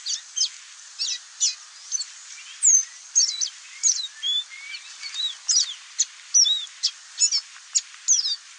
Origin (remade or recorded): recorded